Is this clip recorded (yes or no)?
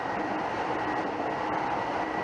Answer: no